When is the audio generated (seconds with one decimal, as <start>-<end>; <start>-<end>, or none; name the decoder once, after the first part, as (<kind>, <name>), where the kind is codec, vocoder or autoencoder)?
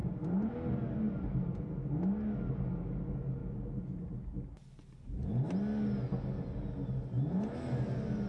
none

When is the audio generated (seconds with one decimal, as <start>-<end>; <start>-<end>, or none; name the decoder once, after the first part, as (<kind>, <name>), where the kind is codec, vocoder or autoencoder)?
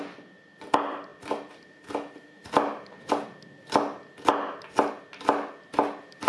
none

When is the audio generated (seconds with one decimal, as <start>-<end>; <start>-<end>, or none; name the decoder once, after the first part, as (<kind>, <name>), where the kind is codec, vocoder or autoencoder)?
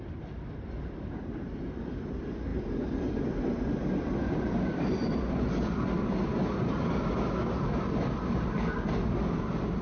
none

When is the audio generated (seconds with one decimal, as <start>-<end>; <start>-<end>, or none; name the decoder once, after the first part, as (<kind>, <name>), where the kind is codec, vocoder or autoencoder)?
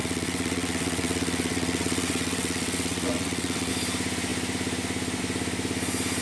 0.0-3.7 (vocoder, WaveNeXt)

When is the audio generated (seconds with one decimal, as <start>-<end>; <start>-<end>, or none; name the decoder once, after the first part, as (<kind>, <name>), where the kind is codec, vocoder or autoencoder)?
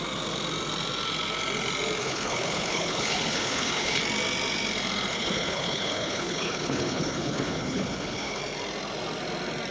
2.0-4.0 (codec, HILCodec); 5.1-8.4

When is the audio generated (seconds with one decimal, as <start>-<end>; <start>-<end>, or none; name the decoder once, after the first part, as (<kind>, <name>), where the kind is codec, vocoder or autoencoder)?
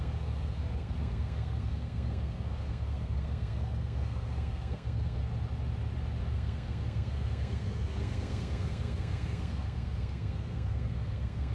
0.0-5.3 (codec, SNAC); 6.2-11.5